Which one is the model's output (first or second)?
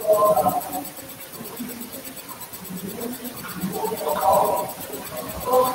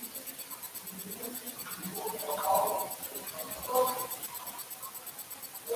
first